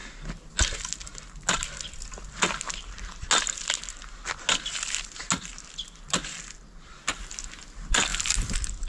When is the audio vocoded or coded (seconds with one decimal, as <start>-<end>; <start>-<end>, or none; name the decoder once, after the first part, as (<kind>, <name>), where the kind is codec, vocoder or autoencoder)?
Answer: none